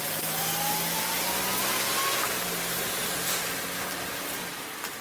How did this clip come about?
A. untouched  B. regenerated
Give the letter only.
A